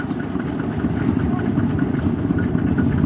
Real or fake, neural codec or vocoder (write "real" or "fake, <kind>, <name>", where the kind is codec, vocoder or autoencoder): real